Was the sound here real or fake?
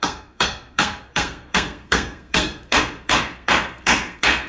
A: fake